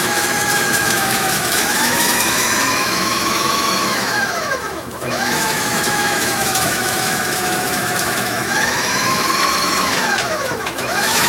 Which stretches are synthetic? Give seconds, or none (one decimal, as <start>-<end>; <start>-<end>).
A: 0.0-11.3